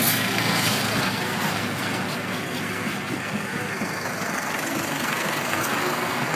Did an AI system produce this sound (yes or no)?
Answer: yes